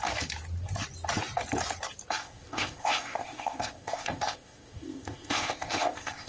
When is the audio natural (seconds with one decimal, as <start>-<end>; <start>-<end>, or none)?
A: 0.0-2.2